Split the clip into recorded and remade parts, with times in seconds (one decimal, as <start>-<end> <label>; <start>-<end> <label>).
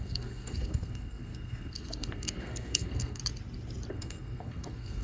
0.0-3.2 remade; 3.2-3.9 recorded; 3.9-5.0 remade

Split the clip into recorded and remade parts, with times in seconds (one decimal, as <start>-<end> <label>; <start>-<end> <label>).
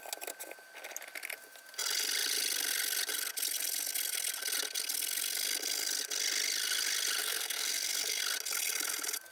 0.0-7.2 recorded; 7.2-8.2 remade; 8.2-9.3 recorded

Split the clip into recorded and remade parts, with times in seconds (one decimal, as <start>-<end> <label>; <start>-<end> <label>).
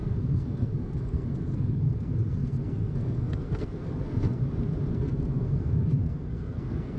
0.0-4.4 remade; 4.4-4.9 recorded; 4.9-7.0 remade